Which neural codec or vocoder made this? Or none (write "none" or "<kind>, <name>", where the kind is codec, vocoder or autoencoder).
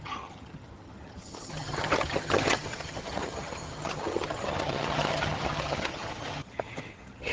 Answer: vocoder, HiFi-GAN